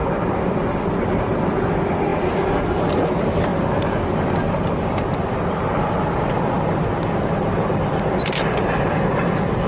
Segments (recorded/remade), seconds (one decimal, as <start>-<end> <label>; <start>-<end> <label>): 0.0-9.7 recorded